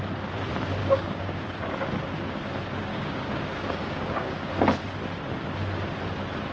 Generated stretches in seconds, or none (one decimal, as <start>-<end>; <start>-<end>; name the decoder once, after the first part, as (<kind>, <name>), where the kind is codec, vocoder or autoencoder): 0.8-1.4 (codec, DAC); 2.9-4.5